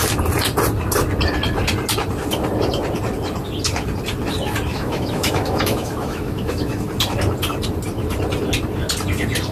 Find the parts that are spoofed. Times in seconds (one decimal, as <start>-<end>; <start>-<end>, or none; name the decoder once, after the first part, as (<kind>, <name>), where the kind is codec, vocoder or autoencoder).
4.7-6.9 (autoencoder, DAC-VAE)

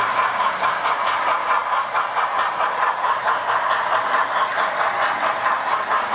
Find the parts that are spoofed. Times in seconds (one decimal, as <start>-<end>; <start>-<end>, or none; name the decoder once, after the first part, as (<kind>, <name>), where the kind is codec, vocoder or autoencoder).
none

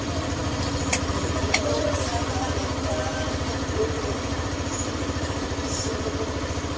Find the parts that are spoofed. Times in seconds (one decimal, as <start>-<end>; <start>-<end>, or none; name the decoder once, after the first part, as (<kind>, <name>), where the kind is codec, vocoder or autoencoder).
0.0-0.4 (vocoder, BigVGAN v2); 1.1-6.8